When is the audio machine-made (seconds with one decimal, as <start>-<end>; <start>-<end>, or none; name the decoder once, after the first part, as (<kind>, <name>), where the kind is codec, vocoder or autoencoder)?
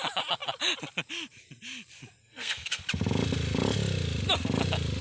2.2-2.8 (codec, SNAC)